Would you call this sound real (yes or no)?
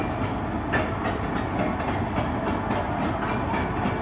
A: yes